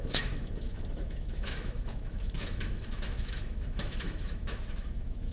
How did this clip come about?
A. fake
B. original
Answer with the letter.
A